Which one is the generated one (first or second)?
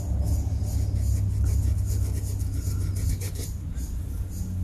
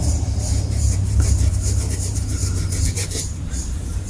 second